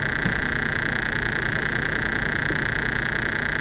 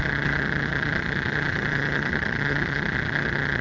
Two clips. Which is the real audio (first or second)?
first